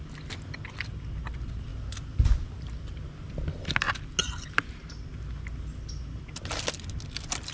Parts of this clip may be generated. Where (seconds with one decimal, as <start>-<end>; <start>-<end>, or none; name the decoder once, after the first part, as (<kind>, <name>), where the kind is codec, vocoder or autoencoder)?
none